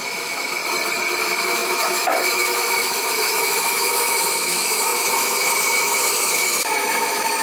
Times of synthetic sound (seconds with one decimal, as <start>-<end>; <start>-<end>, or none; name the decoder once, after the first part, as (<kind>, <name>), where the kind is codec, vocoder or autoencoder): 0.0-0.6 (autoencoder, DAC-VAE); 1.2-7.4